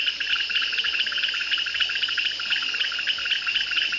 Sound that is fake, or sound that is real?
real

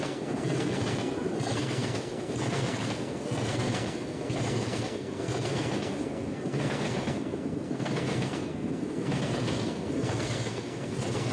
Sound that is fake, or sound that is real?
fake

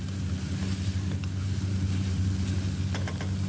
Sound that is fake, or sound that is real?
real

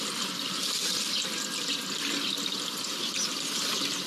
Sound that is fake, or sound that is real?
real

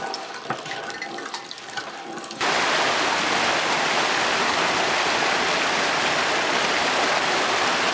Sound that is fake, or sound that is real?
real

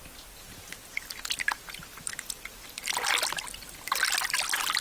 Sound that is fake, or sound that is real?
real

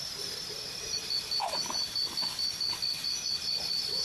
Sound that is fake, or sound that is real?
real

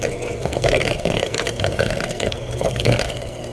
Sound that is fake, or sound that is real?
fake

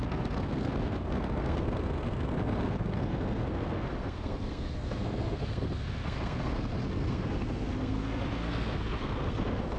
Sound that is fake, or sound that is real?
fake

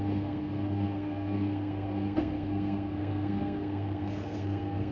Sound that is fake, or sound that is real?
fake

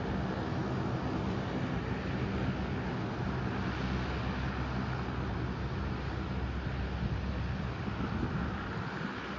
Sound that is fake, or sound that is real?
real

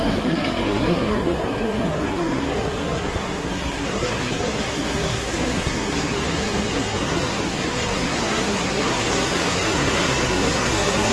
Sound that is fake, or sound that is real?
fake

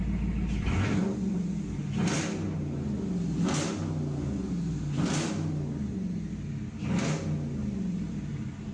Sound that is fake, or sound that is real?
real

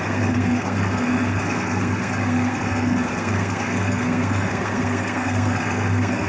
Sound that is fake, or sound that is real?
fake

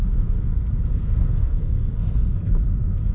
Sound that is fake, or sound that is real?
fake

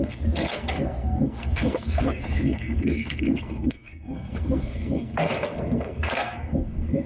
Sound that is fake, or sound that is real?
fake